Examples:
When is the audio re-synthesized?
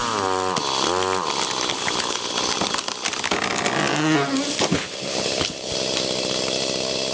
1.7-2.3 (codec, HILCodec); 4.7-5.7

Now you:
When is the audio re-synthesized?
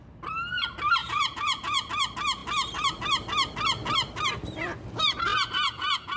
1.0-1.9 (vocoder, Vocos); 5.3-6.2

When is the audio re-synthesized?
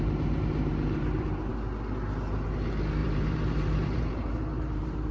0.7-1.5 (vocoder, BigVGAN v2); 3.0-5.1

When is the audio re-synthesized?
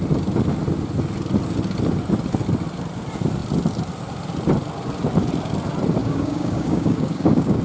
6.0-7.6 (codec, DAC)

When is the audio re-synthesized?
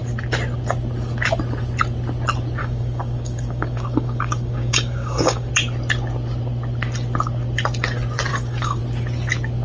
2.6-5.5 (codec, DAC); 8.3-8.8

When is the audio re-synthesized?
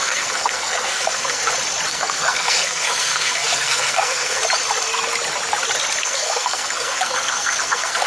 0.0-1.4 (codec, SNAC); 1.9-4.4; 6.0-8.1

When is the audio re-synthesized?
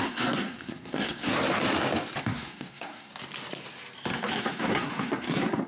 0.0-1.3 (codec, SNAC); 2.2-3.1; 4.4-5.7